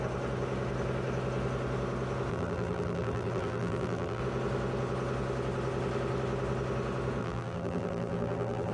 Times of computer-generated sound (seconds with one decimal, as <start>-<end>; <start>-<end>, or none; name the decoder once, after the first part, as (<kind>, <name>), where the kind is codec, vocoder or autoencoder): 2.3-4.2 (vocoder, BigVGAN v2); 7.2-8.7

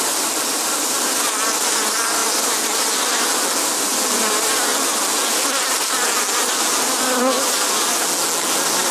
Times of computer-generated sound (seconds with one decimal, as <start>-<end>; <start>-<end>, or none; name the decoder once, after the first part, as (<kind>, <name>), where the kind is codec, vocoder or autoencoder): none

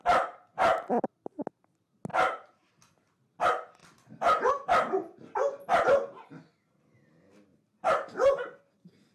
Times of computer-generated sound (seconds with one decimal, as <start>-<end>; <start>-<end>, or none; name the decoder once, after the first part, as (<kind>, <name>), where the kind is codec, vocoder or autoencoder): 0.5-1.1 (vocoder, BigVGAN v2); 2.1-2.7; 7.5-8.6

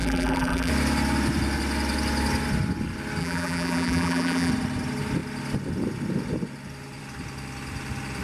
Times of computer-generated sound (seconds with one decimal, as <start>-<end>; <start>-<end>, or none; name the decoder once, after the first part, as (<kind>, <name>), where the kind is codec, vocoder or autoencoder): 0.0-0.7 (vocoder, BigVGAN v2); 3.2-4.5

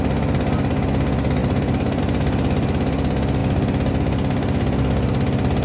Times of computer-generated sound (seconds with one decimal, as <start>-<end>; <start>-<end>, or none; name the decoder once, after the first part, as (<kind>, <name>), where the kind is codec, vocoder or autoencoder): 1.4-2.0 (vocoder, BigVGAN v2)

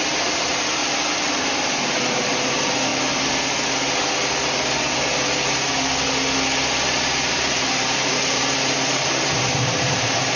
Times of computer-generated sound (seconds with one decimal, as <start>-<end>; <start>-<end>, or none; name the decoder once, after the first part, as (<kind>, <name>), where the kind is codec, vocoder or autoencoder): 0.0-0.8 (vocoder, BigVGAN v2); 1.4-2.9; 7.3-10.4

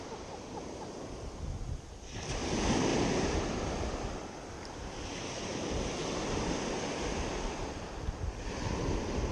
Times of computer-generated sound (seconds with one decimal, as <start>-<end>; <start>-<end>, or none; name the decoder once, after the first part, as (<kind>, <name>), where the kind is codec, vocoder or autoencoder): 0.0-5.5 (vocoder, BigVGAN v2)